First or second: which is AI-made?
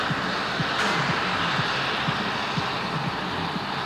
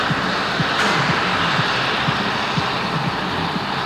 second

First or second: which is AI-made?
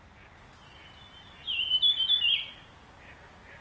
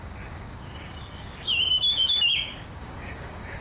second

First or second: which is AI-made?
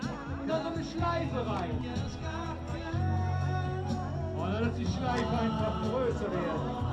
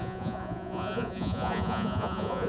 second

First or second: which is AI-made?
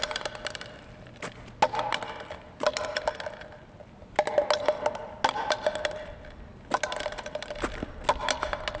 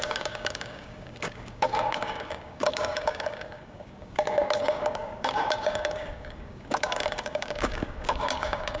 second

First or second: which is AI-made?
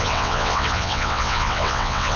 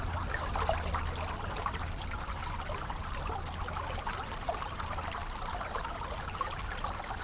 first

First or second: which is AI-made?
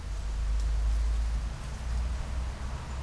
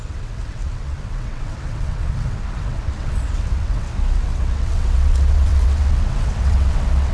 second